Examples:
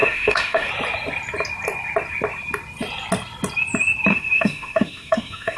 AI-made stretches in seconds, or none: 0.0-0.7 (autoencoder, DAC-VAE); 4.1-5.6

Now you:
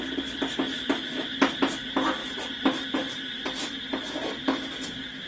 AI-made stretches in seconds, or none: none